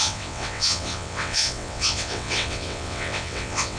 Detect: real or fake fake